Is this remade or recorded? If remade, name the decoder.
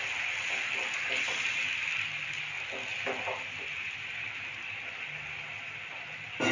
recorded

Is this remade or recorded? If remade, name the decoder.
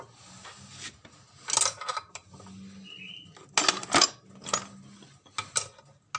recorded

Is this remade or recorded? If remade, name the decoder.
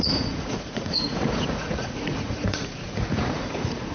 remade, vocoder, Vocos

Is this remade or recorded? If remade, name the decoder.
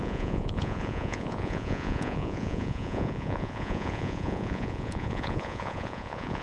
remade, vocoder, Vocos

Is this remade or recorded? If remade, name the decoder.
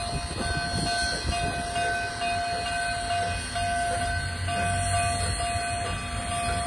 recorded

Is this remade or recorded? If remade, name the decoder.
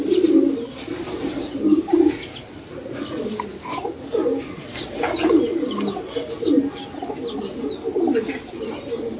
recorded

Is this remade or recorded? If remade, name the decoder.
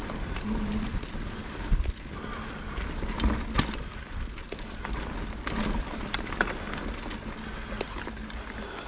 recorded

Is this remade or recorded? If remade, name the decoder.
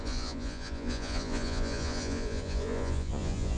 remade, vocoder, Vocos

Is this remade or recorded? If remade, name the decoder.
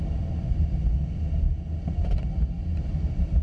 recorded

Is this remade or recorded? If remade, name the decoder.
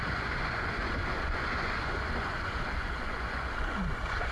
remade, vocoder, Vocos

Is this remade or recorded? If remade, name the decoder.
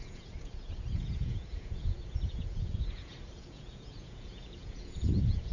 remade, vocoder, Vocos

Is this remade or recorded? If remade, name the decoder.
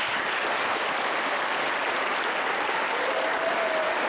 recorded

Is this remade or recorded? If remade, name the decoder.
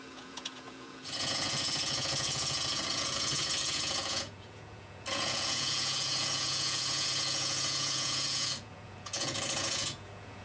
remade, vocoder, Vocos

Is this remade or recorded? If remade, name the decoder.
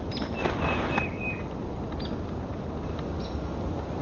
recorded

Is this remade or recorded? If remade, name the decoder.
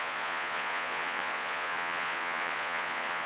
remade, vocoder, Vocos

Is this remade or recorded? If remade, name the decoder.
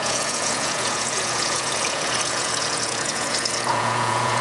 remade, vocoder, Vocos